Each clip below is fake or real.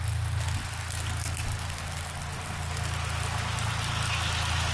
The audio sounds real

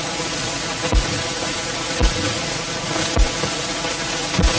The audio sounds fake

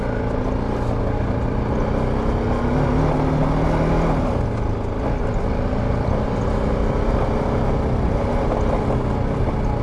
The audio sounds real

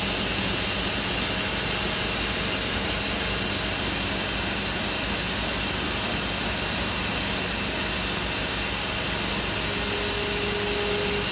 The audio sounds real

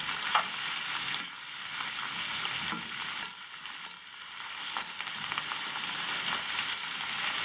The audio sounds real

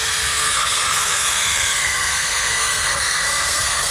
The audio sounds fake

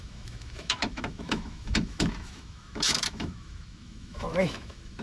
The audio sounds fake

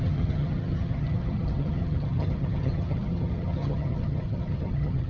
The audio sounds fake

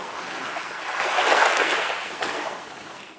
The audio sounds fake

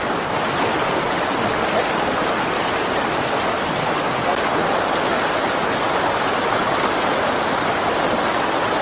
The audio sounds real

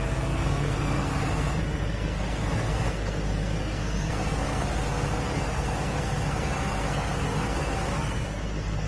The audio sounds fake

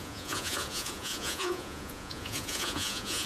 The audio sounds fake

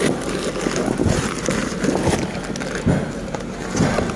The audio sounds real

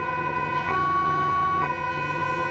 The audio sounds fake